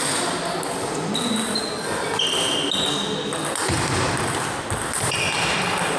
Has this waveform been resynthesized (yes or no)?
no